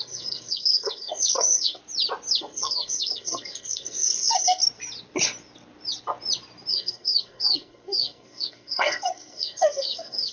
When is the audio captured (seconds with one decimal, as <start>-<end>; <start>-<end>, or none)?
1.8-2.4; 4.6-6.7